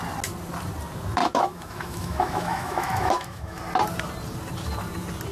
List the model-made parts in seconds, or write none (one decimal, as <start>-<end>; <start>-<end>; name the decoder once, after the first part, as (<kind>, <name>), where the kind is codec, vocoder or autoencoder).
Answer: 1.2-3.6 (autoencoder, DAC-VAE)